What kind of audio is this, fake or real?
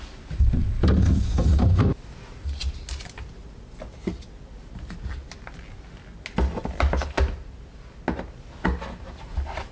real